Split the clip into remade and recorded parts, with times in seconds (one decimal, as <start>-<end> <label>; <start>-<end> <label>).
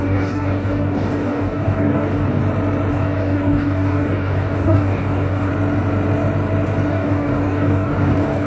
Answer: 0.0-2.4 remade; 2.4-2.9 recorded; 2.9-5.5 remade; 5.5-6.9 recorded; 6.9-8.5 remade